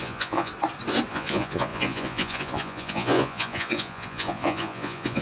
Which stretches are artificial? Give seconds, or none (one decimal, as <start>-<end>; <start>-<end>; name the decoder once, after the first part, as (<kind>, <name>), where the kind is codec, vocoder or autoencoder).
0.0-0.5 (vocoder, Vocos); 1.1-5.2